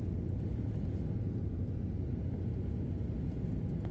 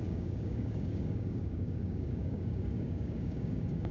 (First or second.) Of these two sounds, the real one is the first